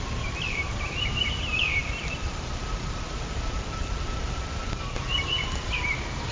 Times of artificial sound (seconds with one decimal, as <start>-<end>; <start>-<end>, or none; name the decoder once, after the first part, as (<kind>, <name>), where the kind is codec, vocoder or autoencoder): 0.0-5.4 (vocoder, BigVGAN v2)